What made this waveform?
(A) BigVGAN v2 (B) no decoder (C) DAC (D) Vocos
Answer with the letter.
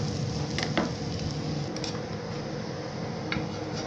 B